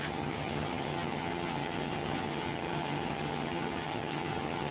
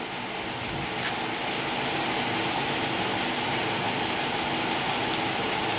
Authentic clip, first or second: second